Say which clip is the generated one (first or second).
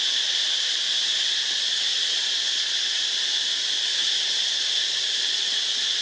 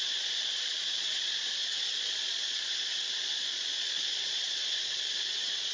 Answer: second